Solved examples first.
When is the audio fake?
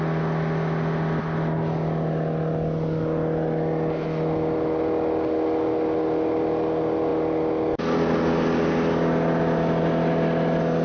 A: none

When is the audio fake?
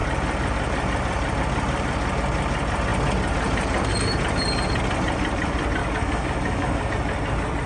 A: 5.8-6.9 (codec, DAC)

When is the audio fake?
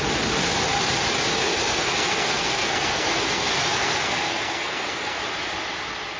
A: 1.5-5.2 (codec, SNAC)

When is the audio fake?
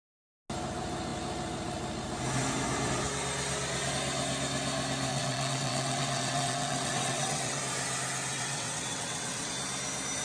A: 5.1-7.6 (vocoder, WaveNeXt); 8.3-9.5